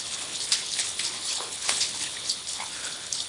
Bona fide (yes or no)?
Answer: no